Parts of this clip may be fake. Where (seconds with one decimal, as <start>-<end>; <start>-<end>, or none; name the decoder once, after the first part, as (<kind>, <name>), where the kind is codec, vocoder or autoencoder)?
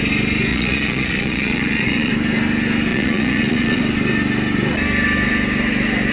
0.5-2.1 (vocoder, Vocos); 2.9-3.8